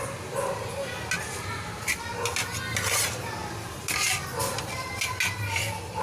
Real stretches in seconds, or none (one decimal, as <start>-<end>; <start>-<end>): 0.0-6.0

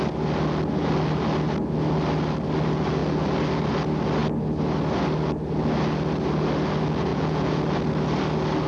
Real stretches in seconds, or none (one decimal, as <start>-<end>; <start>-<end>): 0.0-7.1; 7.6-8.7

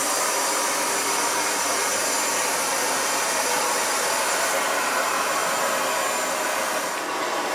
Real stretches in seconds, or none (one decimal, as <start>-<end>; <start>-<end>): 5.4-6.4

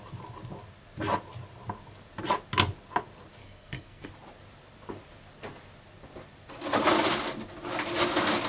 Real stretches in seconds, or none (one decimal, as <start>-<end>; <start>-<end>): 0.0-3.4; 4.1-8.5

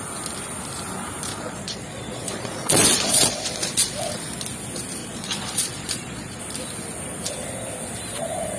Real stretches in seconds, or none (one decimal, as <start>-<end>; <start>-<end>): 0.0-1.3; 4.0-5.0; 6.4-8.6

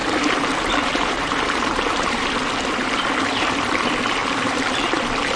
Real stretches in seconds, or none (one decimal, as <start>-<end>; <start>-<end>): 2.2-4.2; 5.0-5.4